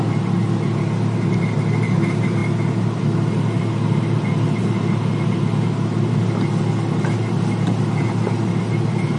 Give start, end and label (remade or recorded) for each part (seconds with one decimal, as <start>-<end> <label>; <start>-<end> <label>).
0.0-9.2 recorded